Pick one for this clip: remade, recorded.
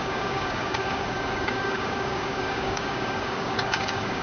remade